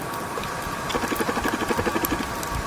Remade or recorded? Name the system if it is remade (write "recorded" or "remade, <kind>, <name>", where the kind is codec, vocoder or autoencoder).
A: remade, vocoder, BigVGAN v2